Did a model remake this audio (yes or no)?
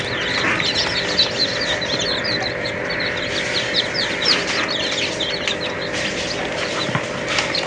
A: yes